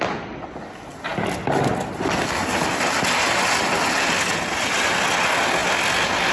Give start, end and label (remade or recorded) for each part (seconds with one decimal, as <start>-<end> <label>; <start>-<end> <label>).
0.0-6.3 recorded